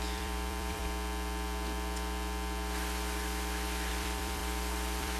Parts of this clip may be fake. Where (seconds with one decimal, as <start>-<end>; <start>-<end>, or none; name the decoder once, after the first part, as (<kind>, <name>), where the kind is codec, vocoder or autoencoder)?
0.0-0.8 (vocoder, BigVGAN v2); 3.9-5.2